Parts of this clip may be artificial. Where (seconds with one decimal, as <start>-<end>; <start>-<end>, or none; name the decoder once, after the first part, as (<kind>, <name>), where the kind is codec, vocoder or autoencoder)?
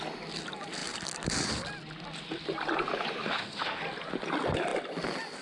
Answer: 3.2-3.8 (autoencoder, DAC-VAE)